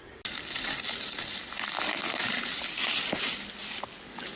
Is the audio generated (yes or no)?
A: no